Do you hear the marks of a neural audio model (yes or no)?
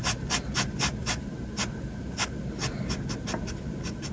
no